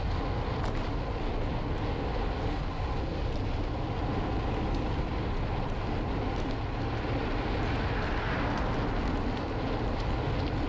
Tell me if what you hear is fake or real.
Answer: real